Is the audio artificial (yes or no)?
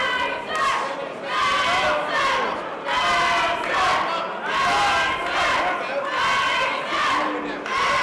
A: no